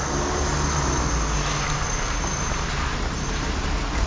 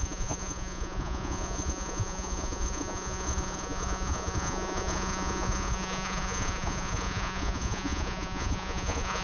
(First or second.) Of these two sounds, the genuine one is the first